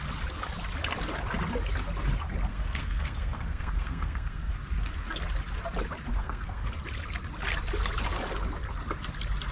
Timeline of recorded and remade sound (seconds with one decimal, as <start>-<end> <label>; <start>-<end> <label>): 0.0-2.5 recorded; 2.5-4.5 remade; 4.5-6.1 recorded; 6.1-6.7 remade; 6.7-9.5 recorded